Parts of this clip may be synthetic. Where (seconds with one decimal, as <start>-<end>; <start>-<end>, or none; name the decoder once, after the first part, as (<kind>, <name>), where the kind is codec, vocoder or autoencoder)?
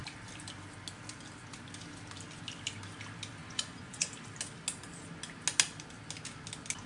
3.4-4.1 (vocoder, Vocos)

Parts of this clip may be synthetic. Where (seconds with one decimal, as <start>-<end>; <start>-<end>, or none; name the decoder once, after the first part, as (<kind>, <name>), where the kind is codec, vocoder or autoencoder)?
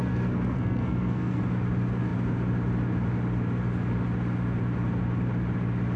0.0-1.4 (codec, SNAC)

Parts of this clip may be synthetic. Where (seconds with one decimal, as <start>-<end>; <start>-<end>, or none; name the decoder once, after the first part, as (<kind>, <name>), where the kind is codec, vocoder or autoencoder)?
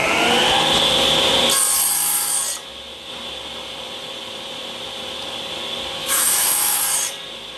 6.0-6.8 (autoencoder, DAC-VAE)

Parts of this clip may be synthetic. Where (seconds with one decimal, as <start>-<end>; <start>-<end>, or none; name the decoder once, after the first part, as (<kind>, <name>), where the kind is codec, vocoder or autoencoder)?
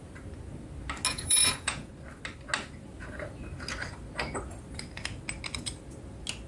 1.1-1.9 (vocoder, Vocos)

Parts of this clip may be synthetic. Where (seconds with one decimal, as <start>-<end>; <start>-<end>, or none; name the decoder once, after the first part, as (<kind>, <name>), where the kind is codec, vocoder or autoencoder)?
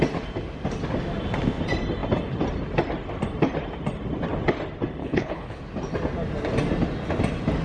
5.0-5.6 (codec, HILCodec)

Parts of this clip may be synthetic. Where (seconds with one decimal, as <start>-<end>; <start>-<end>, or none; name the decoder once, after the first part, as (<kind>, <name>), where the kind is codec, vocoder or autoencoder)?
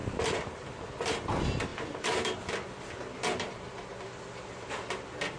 none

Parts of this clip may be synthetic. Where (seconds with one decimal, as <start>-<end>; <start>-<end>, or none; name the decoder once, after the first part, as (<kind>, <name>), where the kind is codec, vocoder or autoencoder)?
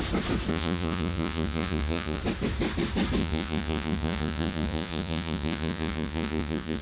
0.5-2.2 (vocoder, Vocos); 3.2-6.8